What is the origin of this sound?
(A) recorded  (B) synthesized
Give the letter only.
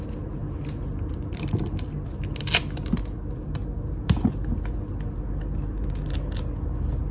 A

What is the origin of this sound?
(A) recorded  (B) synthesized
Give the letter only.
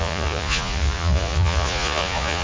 B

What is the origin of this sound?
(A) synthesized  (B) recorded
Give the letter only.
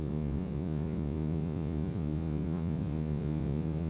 A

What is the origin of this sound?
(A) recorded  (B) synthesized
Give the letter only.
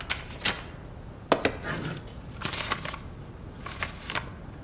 A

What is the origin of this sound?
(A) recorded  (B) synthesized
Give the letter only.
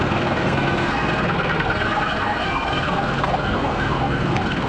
B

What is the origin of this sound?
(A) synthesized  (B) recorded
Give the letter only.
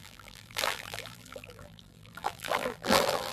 A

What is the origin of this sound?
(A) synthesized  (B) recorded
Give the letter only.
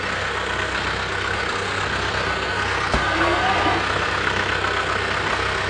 A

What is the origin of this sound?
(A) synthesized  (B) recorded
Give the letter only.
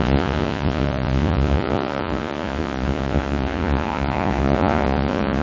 A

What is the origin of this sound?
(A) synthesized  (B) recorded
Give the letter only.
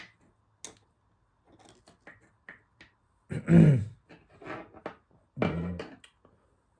B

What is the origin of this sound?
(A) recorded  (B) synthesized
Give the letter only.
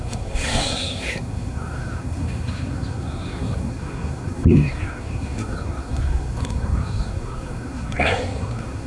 B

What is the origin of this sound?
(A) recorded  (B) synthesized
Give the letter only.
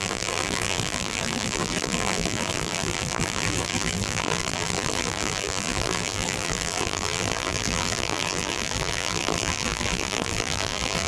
B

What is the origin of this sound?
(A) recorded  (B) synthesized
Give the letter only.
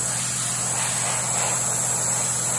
A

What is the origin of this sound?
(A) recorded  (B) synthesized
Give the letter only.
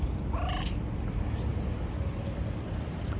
A